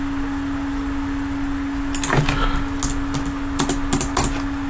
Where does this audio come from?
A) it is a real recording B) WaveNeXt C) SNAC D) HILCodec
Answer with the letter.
A